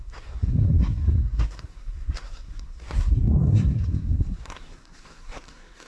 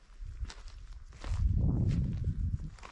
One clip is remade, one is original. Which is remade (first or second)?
first